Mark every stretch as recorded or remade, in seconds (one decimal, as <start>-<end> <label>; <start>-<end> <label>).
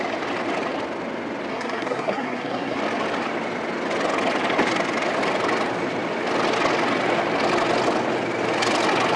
0.0-1.5 recorded; 1.5-2.8 remade; 2.8-9.2 recorded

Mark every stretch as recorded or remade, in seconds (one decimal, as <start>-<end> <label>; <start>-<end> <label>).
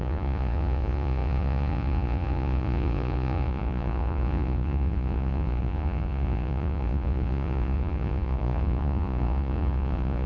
0.0-10.3 remade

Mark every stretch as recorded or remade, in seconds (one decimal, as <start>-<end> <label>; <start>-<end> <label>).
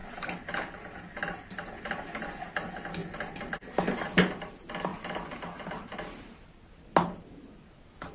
0.0-8.1 recorded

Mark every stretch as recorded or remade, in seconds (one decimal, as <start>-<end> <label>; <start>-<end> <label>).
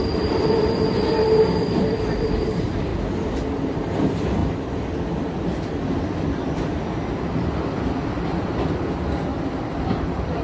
0.0-2.9 remade; 2.9-3.7 recorded; 3.7-10.4 remade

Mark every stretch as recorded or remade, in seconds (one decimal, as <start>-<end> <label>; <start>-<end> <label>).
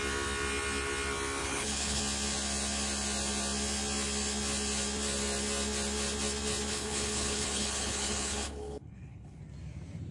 0.0-1.4 recorded; 1.4-2.0 remade; 2.0-6.7 recorded; 6.7-9.4 remade; 9.4-10.1 recorded